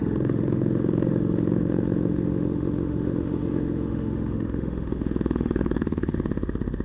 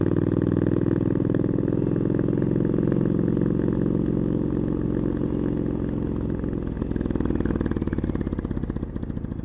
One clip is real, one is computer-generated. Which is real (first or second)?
second